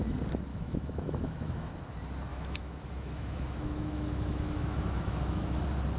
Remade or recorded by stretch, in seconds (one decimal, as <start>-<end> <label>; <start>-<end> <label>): 0.0-0.5 recorded; 0.5-1.7 remade; 1.7-2.3 recorded; 2.3-5.6 remade; 5.6-6.0 recorded